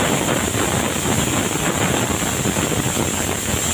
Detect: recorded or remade recorded